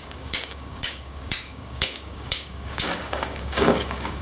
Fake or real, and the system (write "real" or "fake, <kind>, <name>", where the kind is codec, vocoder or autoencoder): fake, codec, DAC